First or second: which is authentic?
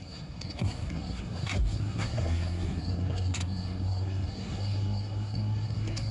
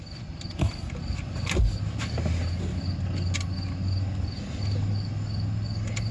second